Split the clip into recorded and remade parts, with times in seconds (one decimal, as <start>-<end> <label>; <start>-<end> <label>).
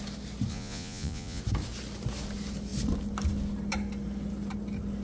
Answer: 0.0-0.5 recorded; 0.5-1.4 remade; 1.4-5.0 recorded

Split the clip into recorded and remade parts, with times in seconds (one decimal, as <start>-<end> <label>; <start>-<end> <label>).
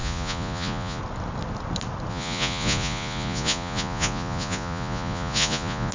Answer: 0.0-1.0 remade; 1.0-2.1 recorded; 2.1-5.9 remade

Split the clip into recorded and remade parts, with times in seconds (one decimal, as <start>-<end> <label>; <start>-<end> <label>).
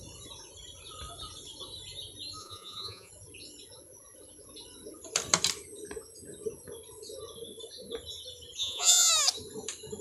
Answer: 0.0-2.4 recorded; 2.4-3.1 remade; 3.1-8.6 recorded; 8.6-9.1 remade; 9.1-10.0 recorded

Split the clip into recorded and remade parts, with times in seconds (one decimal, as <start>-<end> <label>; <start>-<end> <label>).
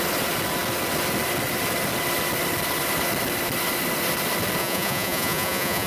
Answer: 0.0-4.6 recorded; 4.6-5.9 remade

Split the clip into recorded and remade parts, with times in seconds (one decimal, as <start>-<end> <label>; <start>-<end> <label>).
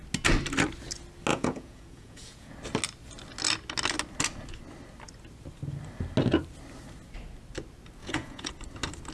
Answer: 0.0-1.3 recorded; 1.3-2.5 remade; 2.5-8.0 recorded; 8.0-8.5 remade; 8.5-9.1 recorded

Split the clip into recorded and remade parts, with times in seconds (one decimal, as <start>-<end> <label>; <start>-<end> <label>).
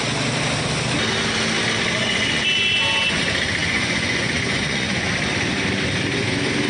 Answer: 0.0-2.0 recorded; 2.0-3.2 remade; 3.2-3.6 recorded; 3.6-5.1 remade; 5.1-6.7 recorded